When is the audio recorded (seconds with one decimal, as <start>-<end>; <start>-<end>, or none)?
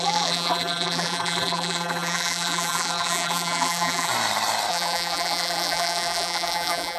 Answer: 4.1-4.7